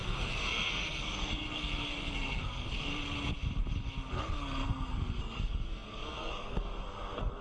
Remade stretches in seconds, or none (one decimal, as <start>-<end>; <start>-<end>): 0.0-2.9; 4.1-7.4